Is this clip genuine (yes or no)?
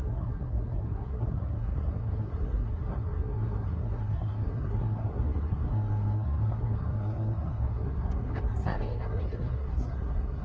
no